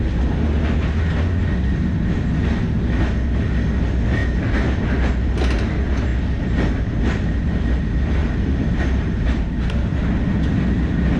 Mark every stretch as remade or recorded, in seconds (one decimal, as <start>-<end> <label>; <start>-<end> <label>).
0.0-8.2 recorded; 8.2-10.0 remade; 10.0-11.2 recorded